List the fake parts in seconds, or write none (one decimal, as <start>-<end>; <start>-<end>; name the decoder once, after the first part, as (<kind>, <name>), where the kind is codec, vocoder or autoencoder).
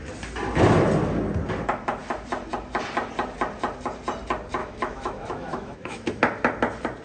4.6-6.2 (autoencoder, DAC-VAE)